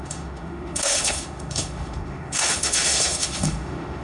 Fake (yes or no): yes